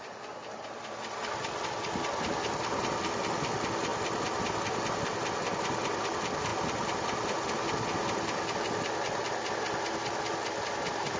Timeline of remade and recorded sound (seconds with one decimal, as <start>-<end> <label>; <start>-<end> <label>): 0.0-11.2 recorded